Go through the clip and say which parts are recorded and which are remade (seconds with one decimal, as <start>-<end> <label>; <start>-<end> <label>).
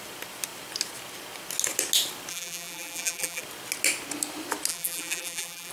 0.0-2.3 recorded; 2.3-3.4 remade; 3.4-4.7 recorded; 4.7-5.7 remade